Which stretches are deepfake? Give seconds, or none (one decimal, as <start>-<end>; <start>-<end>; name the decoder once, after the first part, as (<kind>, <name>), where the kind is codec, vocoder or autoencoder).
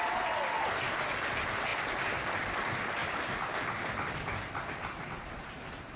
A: none